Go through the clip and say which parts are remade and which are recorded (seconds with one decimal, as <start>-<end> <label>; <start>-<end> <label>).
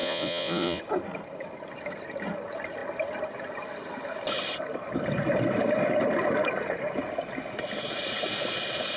0.0-0.8 remade; 0.8-9.0 recorded